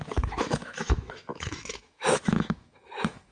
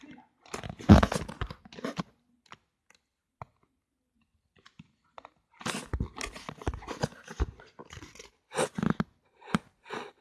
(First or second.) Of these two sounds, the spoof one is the first